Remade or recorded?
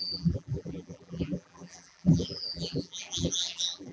remade